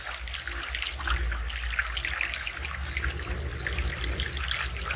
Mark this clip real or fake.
real